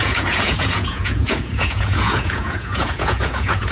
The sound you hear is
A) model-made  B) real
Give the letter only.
A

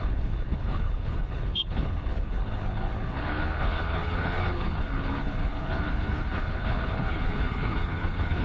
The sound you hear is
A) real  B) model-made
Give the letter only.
B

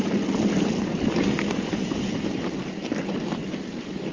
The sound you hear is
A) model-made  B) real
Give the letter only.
B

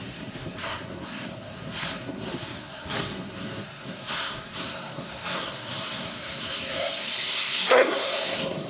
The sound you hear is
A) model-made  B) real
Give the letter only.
A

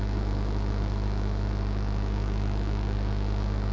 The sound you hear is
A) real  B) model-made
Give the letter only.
B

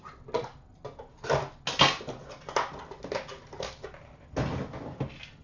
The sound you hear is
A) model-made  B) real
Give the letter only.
B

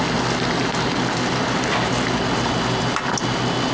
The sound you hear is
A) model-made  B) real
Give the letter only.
B